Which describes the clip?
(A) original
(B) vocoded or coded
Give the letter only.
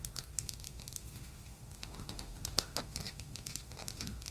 B